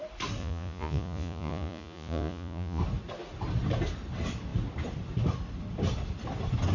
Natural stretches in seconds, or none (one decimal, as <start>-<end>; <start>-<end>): 0.0-0.4; 2.8-6.7